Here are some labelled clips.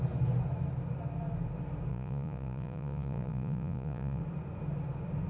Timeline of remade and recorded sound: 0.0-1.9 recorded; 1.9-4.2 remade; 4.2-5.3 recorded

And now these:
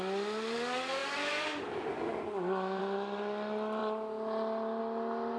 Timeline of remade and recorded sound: 0.0-5.4 recorded